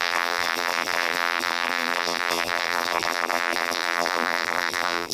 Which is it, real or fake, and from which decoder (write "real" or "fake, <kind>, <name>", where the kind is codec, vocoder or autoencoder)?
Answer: fake, vocoder, BigVGAN v2